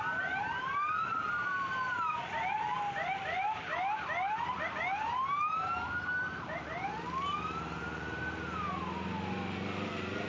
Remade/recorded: recorded